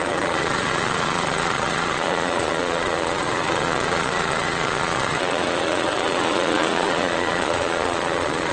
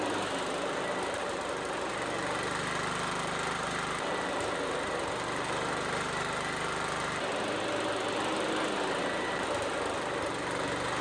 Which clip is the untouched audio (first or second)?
second